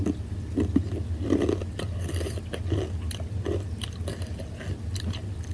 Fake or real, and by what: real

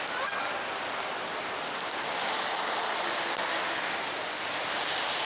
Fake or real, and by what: real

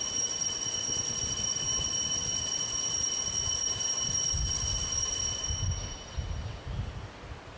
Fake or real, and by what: real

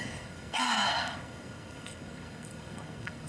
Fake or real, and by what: fake, codec, SNAC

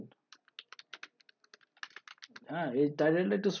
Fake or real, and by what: real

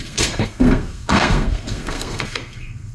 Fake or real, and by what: fake, codec, SNAC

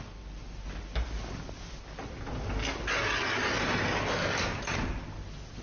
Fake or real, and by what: real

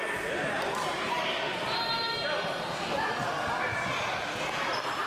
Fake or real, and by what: real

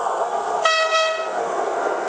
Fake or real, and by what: fake, codec, SNAC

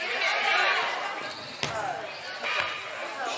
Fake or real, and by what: real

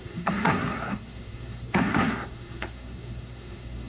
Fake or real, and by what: fake, codec, SNAC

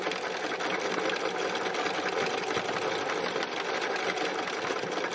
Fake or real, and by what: real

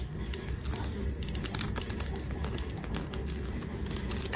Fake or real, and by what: real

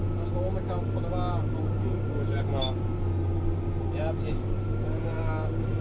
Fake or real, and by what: real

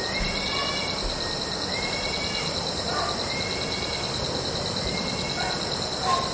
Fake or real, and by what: real